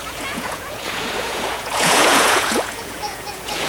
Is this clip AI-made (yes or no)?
yes